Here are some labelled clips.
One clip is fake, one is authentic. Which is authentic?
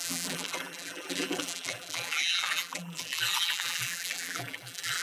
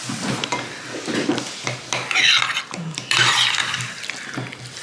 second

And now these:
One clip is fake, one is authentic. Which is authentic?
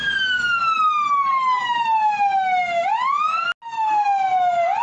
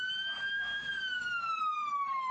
first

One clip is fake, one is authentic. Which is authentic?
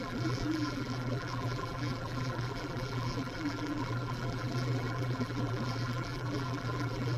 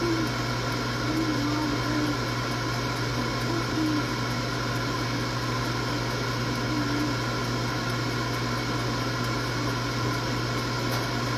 second